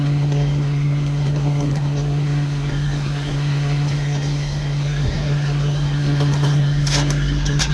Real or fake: fake